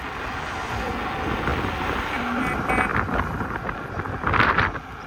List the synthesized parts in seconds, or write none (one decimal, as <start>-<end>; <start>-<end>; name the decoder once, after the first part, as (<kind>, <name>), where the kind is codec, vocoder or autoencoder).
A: none